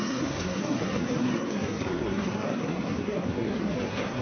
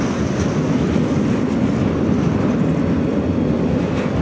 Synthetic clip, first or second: first